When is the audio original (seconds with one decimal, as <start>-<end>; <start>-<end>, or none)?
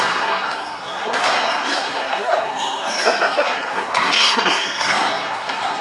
none